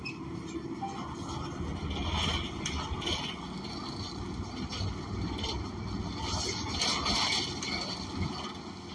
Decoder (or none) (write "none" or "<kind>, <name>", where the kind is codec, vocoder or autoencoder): none